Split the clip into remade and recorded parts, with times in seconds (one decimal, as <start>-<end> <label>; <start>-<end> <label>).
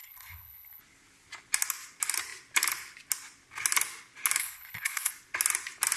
0.0-0.8 remade; 0.8-4.4 recorded; 4.4-5.1 remade; 5.1-6.0 recorded